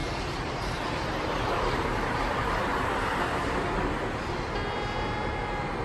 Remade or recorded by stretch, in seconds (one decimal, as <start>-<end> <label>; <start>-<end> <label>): 0.0-3.5 remade; 3.5-5.8 recorded